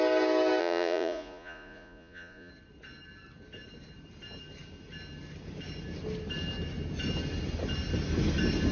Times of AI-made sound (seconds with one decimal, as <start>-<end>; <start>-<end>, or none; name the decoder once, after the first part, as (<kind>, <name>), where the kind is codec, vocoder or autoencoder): 0.6-2.5 (vocoder, Vocos)